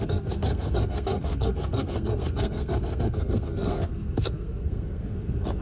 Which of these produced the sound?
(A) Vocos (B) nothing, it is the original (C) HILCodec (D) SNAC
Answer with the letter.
D